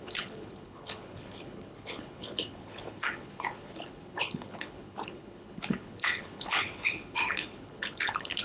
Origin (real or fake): fake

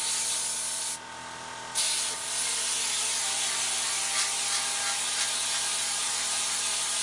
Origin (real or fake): real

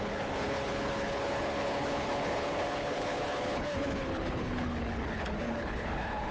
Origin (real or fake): fake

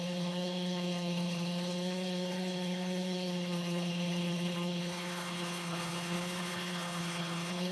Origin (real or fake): fake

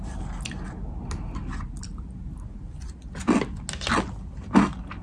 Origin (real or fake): real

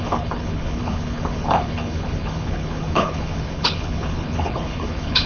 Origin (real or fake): fake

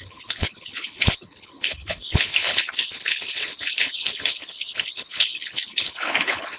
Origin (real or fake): fake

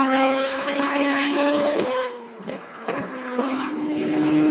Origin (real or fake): fake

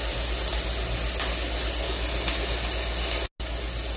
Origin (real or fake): real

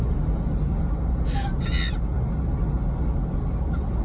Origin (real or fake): real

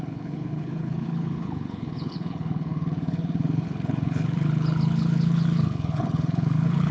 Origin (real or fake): fake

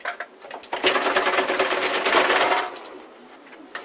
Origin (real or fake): real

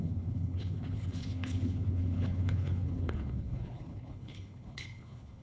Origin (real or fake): fake